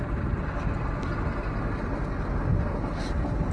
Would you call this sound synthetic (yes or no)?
no